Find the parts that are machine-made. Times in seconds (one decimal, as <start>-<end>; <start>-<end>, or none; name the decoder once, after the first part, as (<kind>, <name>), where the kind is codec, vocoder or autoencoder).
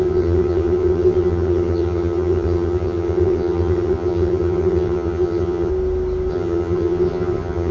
0.0-5.7 (vocoder, HiFi-GAN); 6.3-7.7